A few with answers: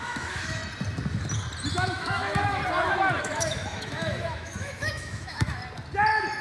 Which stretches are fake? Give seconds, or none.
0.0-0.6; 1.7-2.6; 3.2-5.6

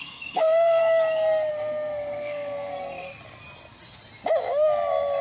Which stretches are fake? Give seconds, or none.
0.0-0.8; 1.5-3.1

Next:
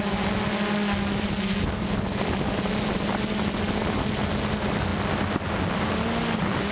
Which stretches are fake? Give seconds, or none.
none

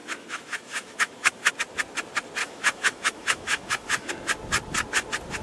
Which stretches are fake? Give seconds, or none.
0.0-1.5; 2.4-4.1

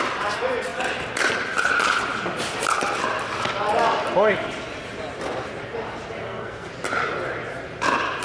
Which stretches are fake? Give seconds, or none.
6.2-6.7